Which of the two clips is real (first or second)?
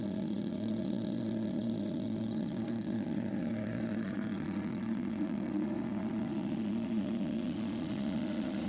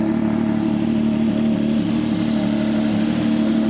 second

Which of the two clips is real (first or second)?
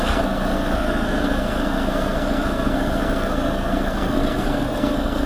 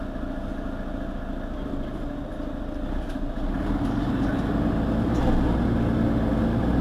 second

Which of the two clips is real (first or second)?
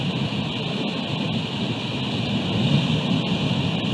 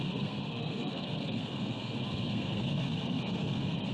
first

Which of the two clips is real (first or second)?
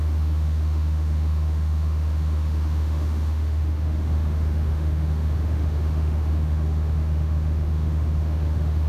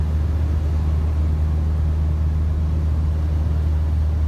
second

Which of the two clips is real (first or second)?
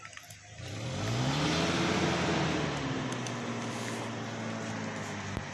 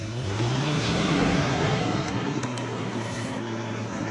first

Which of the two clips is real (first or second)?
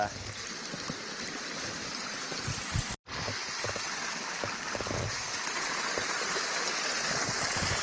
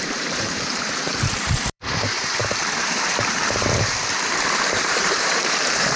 first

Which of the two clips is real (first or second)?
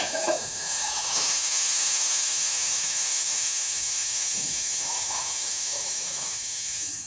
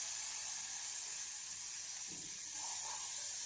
second